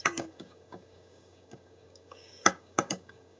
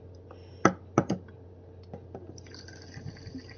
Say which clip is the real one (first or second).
second